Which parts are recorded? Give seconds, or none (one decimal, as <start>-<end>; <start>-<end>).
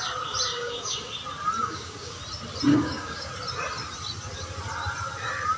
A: 0.0-0.5; 1.1-1.6; 2.2-2.7; 3.3-5.6